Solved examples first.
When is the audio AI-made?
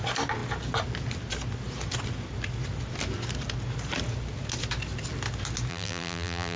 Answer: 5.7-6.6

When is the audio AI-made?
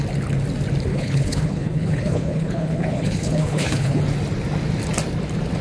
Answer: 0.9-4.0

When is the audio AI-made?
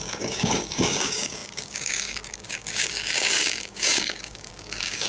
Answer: 0.0-5.1